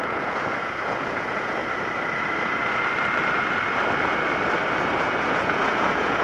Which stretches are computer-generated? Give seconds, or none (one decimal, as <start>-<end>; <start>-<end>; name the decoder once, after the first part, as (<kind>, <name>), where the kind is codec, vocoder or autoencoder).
0.0-1.6 (vocoder, Vocos); 4.8-6.2